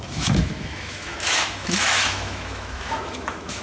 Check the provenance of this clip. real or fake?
fake